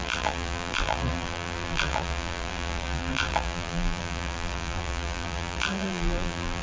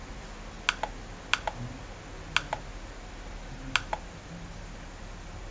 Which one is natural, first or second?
second